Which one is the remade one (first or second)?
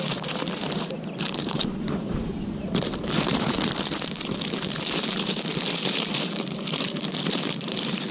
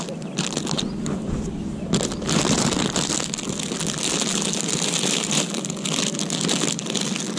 first